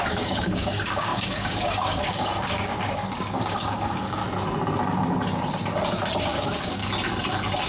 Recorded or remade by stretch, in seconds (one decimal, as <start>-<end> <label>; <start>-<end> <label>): 0.0-2.7 remade; 2.7-3.3 recorded; 3.3-4.2 remade; 4.2-6.2 recorded; 6.2-6.8 remade; 6.8-7.7 recorded